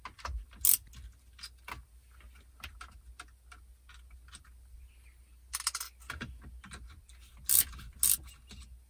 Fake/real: real